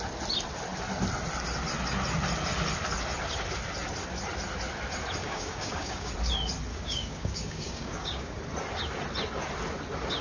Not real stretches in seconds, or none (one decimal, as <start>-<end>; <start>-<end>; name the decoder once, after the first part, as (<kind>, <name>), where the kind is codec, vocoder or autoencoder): 5.2-6.1 (codec, DAC); 6.7-8.4